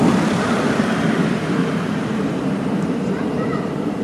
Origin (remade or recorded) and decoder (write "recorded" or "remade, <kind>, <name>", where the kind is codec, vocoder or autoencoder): remade, vocoder, BigVGAN v2